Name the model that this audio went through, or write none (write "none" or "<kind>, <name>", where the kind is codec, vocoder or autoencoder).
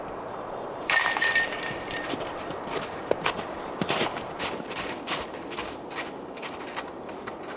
vocoder, BigVGAN v2